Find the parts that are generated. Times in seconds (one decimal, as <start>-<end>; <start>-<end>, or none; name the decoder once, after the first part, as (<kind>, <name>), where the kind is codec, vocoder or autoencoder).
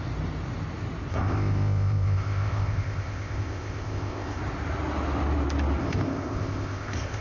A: 1.1-4.4 (codec, ZipCodec); 5.8-7.2